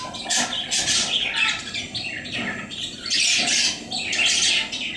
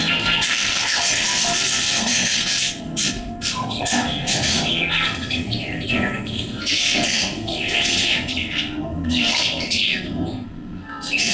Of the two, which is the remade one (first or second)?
second